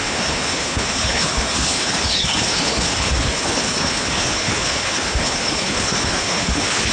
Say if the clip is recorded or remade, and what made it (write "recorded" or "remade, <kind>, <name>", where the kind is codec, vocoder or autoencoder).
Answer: remade, codec, HILCodec